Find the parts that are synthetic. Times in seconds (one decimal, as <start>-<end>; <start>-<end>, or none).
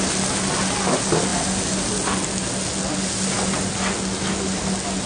none